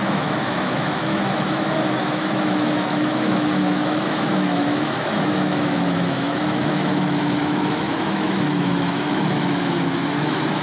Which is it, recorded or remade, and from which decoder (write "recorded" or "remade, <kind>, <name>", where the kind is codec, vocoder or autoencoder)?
remade, autoencoder, DAC-VAE